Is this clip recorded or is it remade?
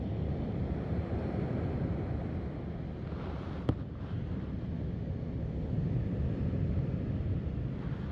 recorded